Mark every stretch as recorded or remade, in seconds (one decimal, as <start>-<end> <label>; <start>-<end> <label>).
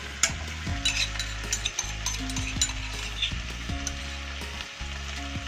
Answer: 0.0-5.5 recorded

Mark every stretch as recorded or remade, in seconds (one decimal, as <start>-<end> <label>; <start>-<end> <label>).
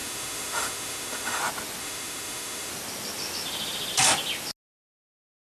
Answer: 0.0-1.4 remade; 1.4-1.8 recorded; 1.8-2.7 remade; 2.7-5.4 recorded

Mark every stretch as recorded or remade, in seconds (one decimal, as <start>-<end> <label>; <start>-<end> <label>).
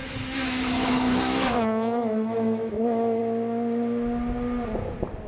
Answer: 0.0-3.2 remade; 3.2-5.3 recorded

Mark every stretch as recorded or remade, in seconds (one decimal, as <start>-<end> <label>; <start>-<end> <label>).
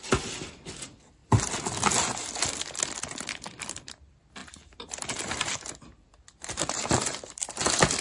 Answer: 0.0-1.2 remade; 1.2-3.0 recorded; 3.0-4.4 remade; 4.4-6.5 recorded; 6.5-8.0 remade